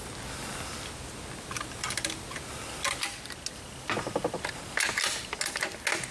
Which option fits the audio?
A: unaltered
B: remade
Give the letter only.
A